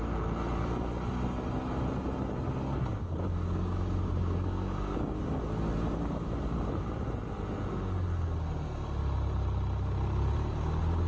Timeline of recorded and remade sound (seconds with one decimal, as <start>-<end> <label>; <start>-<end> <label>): 0.0-2.9 recorded; 2.9-5.2 remade; 5.2-11.1 recorded